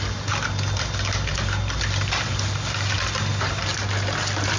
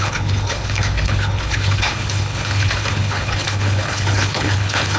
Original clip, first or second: first